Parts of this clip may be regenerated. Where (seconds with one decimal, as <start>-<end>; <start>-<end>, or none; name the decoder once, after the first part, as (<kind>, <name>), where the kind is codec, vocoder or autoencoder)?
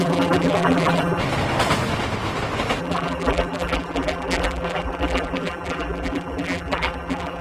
0.0-1.2 (vocoder, BigVGAN v2); 2.8-7.4